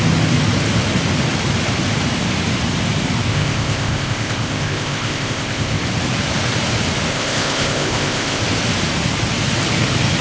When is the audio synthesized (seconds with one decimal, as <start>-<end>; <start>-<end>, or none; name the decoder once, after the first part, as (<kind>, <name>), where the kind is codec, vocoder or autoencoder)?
3.3-5.8 (codec, ZipCodec); 7.1-8.4